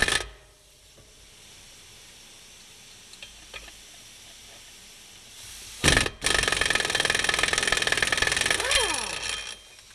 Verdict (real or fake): real